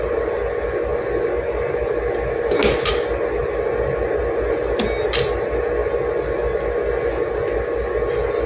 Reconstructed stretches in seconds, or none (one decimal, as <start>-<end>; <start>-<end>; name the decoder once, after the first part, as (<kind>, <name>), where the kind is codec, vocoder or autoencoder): none